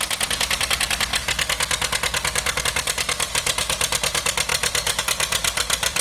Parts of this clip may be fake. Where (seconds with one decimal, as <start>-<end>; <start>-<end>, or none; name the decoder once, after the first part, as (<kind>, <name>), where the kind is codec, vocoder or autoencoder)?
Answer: 0.0-1.1 (vocoder, BigVGAN v2); 2.6-6.0